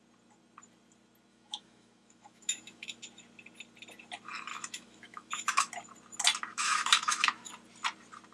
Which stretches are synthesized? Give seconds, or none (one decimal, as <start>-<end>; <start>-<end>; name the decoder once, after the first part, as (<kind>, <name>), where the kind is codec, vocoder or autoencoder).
1.3-3.0 (autoencoder, DAC-VAE); 4.5-5.7; 6.5-7.5